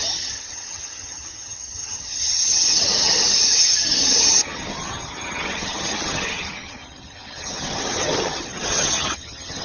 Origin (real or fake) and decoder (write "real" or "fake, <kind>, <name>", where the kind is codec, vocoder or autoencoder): fake, vocoder, HiFi-GAN